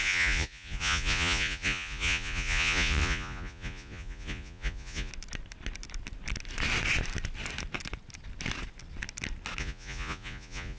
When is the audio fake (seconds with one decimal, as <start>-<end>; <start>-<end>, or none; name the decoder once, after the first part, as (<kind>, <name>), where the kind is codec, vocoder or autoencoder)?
0.0-5.1 (vocoder, Vocos); 9.6-10.8